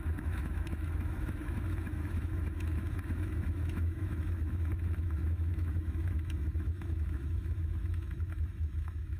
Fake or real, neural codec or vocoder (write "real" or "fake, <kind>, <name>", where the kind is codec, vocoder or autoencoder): fake, autoencoder, DAC-VAE